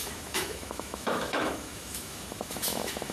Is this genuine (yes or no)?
no